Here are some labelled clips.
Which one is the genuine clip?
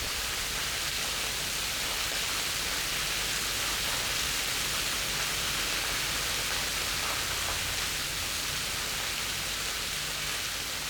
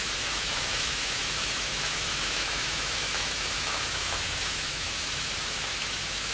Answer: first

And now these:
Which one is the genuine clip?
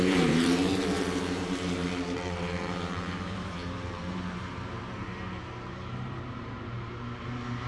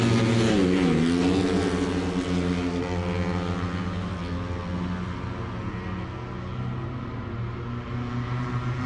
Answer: second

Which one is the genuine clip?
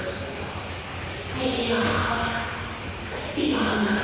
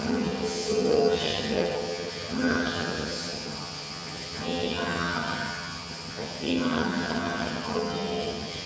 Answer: first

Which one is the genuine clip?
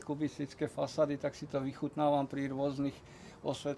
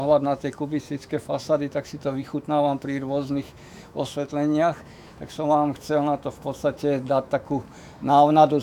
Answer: first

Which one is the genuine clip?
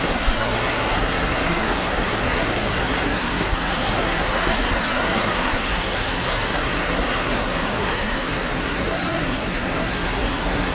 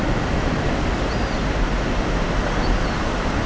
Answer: second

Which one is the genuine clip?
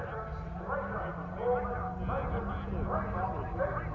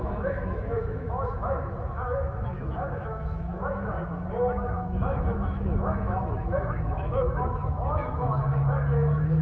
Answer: first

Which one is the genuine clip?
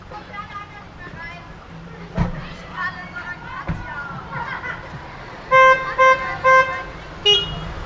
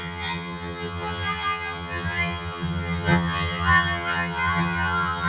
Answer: first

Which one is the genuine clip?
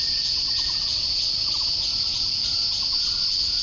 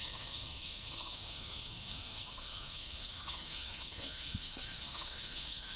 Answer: first